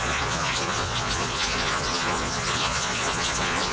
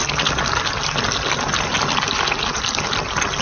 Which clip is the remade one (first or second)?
first